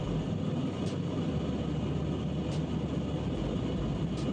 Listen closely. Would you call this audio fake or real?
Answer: real